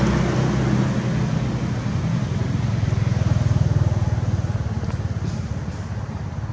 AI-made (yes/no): no